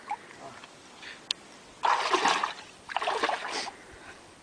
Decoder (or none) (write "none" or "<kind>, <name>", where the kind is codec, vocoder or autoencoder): none